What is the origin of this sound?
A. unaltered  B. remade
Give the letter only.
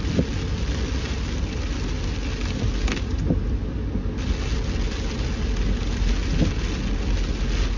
A